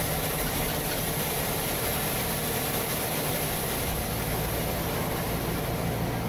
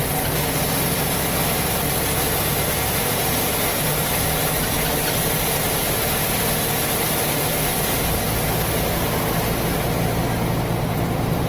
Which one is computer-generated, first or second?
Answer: first